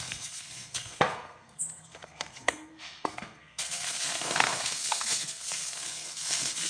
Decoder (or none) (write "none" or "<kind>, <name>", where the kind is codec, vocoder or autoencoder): codec, SNAC